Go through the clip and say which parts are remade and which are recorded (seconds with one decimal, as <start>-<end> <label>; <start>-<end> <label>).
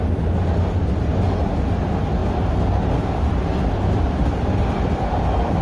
0.0-5.6 recorded